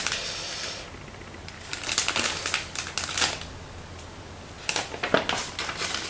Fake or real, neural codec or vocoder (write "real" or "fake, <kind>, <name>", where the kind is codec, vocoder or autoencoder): real